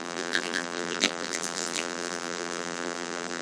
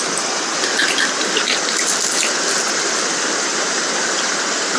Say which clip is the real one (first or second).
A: second